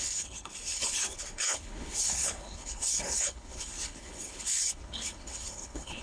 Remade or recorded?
remade